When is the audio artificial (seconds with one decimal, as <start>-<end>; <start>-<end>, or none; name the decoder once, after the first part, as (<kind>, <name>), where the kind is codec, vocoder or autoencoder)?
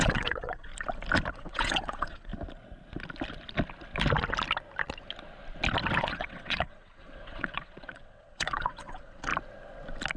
0.0-0.7 (vocoder, WaveNeXt); 1.3-2.3; 6.0-9.3